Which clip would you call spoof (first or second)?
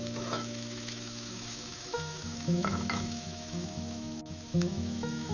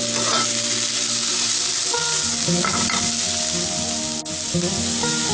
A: first